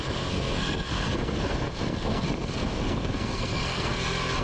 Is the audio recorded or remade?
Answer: remade